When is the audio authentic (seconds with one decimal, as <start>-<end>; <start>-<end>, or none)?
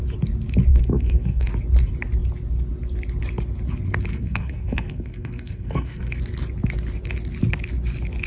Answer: 0.0-0.7; 1.5-4.1; 6.2-8.3